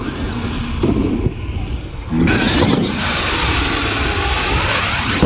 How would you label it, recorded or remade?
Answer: recorded